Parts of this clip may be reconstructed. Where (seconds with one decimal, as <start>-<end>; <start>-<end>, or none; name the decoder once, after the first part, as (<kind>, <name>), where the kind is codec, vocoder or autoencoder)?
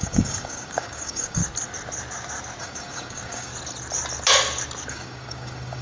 0.0-1.4 (codec, DAC); 2.6-3.5; 4.9-5.8